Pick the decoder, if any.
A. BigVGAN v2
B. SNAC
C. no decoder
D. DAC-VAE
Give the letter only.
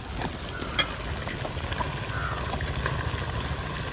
C